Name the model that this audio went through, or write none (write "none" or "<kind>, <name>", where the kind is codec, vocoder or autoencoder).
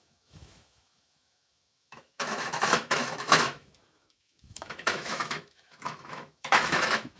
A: autoencoder, DAC-VAE